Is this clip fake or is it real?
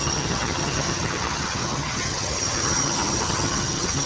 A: fake